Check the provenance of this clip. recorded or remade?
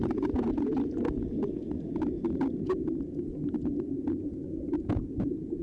remade